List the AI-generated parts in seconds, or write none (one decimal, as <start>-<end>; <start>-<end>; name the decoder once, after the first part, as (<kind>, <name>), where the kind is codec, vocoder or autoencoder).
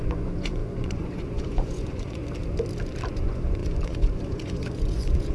0.0-2.2 (vocoder, Vocos); 3.1-5.3